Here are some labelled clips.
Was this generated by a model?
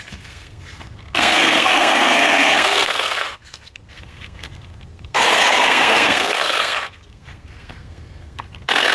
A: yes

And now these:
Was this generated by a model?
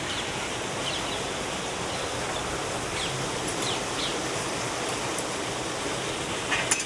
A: no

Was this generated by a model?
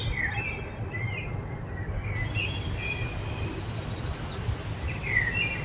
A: no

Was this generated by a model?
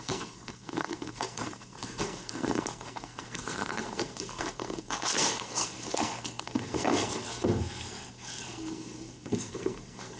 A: yes